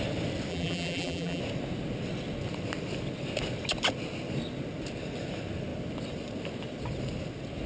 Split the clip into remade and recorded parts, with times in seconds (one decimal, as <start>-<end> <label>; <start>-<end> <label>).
0.0-0.5 recorded; 0.5-1.4 remade; 1.4-7.7 recorded